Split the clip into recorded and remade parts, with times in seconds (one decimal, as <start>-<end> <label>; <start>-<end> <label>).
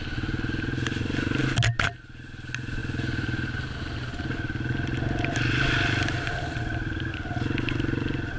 0.0-8.4 recorded